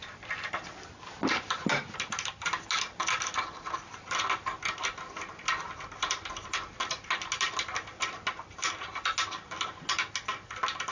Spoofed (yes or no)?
no